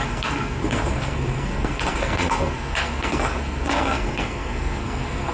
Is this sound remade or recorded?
remade